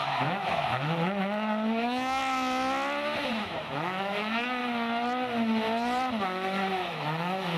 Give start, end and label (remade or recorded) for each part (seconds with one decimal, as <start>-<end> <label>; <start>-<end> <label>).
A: 0.0-2.2 remade; 2.2-3.3 recorded; 3.3-4.6 remade; 4.6-6.2 recorded; 6.2-7.6 remade